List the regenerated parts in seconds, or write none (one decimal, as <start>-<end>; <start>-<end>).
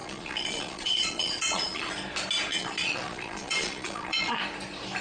0.0-1.9; 2.5-4.4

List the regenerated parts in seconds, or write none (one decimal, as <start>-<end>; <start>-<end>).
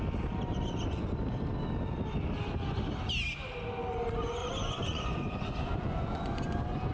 4.4-6.9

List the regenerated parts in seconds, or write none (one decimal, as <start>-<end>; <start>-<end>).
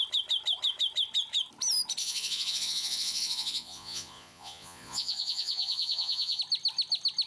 2.0-6.4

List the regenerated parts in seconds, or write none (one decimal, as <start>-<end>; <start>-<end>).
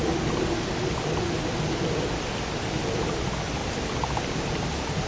none